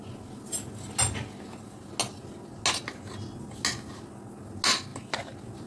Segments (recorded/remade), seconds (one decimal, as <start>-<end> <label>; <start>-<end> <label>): 0.0-5.7 recorded